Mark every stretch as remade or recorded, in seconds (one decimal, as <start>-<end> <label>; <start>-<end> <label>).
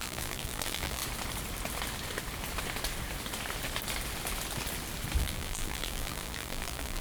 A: 0.0-1.0 remade; 1.0-5.2 recorded; 5.2-7.0 remade